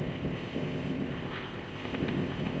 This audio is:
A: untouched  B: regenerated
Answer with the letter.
B